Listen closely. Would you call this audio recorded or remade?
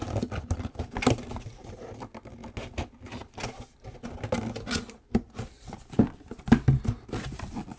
recorded